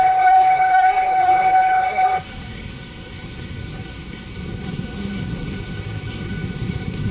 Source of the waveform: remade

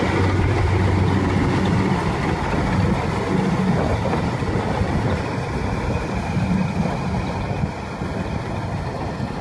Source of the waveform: recorded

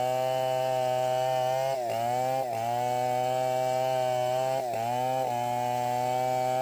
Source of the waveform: recorded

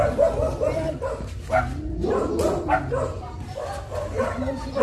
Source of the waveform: recorded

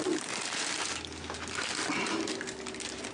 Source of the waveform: recorded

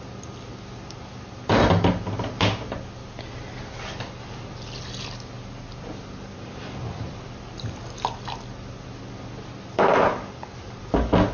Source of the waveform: recorded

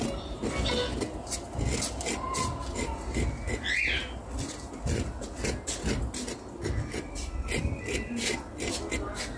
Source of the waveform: recorded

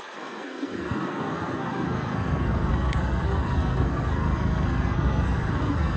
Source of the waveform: remade